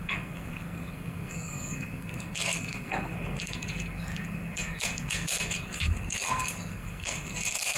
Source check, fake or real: fake